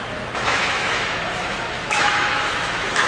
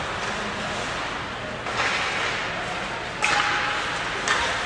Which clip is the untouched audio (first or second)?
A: second